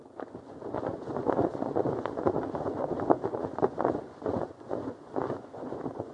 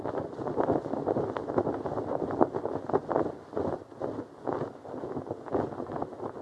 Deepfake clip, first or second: first